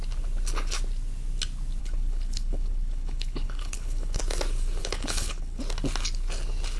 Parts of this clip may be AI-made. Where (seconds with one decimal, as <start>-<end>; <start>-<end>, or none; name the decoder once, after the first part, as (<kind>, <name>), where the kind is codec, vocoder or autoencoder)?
1.8-4.2 (codec, HILCodec); 4.8-5.6